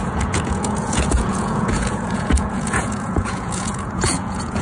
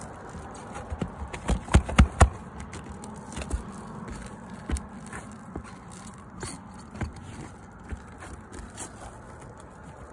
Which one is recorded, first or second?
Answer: second